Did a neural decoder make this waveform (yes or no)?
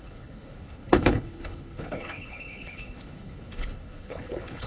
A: yes